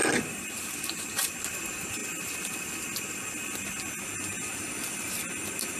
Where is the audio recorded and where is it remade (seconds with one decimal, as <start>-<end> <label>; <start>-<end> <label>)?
0.0-1.4 remade; 1.4-5.8 recorded